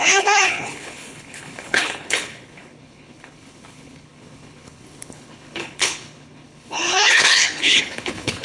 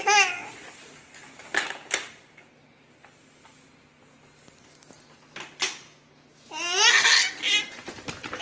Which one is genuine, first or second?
second